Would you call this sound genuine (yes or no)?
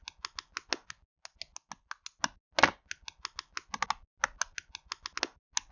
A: yes